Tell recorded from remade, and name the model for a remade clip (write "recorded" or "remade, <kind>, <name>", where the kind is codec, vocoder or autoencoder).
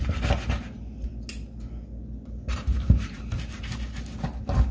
recorded